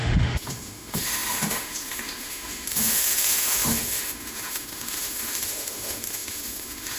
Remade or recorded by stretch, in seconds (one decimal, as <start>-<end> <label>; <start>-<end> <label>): 0.0-7.0 remade